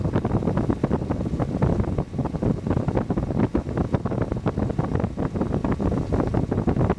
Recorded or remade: recorded